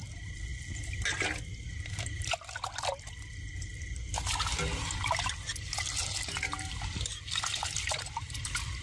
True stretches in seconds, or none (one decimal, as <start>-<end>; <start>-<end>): 0.0-8.8